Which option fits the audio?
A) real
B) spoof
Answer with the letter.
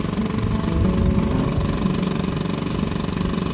A